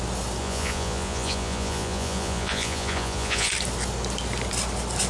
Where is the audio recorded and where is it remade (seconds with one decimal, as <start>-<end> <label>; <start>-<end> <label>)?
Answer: 0.0-0.4 recorded; 0.4-3.5 remade; 3.5-5.1 recorded